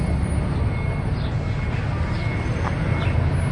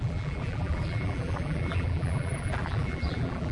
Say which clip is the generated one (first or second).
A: second